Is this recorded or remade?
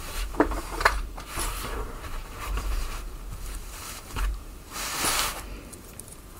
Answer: remade